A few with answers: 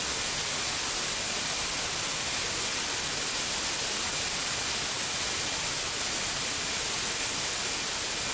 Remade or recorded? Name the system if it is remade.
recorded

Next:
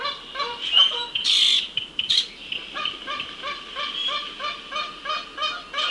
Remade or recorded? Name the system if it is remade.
recorded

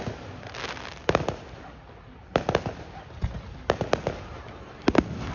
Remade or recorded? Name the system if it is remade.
recorded